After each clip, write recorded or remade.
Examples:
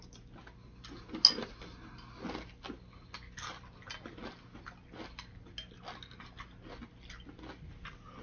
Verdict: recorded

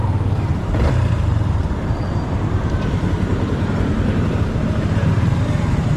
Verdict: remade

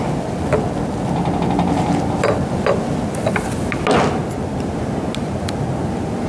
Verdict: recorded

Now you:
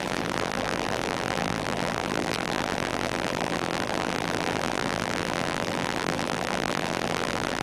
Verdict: remade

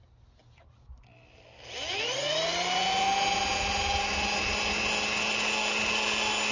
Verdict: recorded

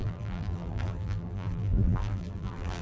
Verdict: remade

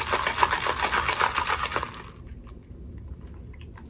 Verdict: recorded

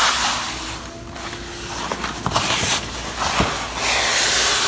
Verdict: recorded